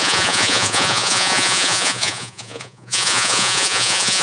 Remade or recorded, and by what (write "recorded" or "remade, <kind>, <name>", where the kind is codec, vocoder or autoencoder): remade, vocoder, Vocos